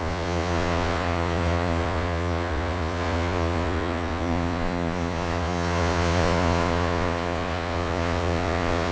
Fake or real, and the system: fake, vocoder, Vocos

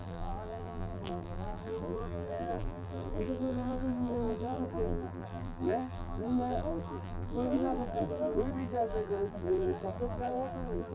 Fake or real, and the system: fake, vocoder, BigVGAN v2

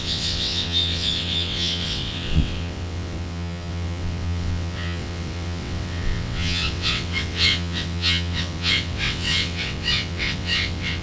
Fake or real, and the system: fake, vocoder, WaveNeXt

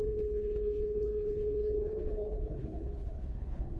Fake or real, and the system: fake, codec, HILCodec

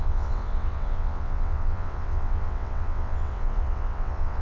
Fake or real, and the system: fake, vocoder, WaveNeXt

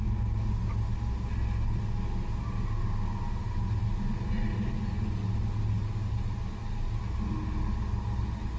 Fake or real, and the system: real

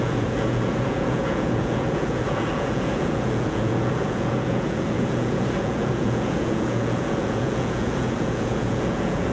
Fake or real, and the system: fake, vocoder, Vocos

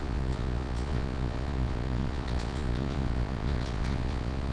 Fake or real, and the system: fake, vocoder, Vocos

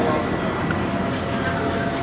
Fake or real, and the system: real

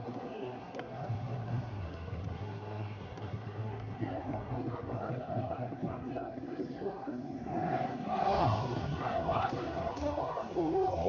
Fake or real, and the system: fake, codec, SNAC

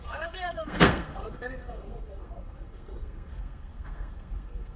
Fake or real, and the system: fake, codec, SNAC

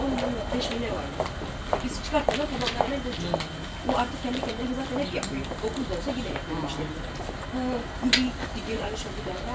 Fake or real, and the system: real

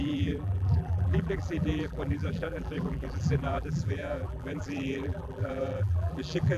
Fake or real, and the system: fake, vocoder, BigVGAN v2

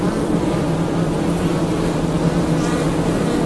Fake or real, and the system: real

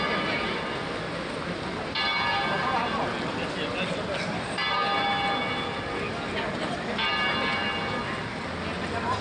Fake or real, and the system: real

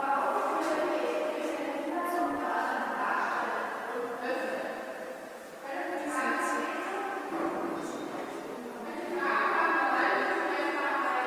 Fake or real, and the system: real